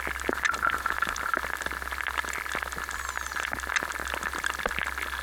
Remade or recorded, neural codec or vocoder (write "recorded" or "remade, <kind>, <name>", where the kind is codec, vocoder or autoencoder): recorded